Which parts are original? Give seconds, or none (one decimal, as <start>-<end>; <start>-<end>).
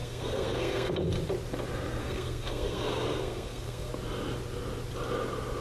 0.9-2.0; 3.9-5.6